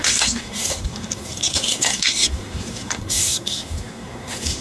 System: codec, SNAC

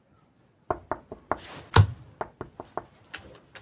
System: none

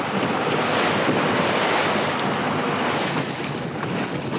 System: none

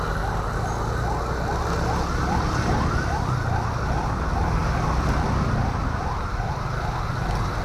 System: none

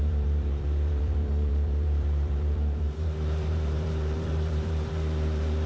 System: vocoder, BigVGAN v2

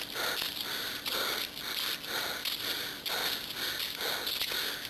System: none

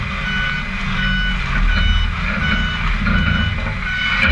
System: none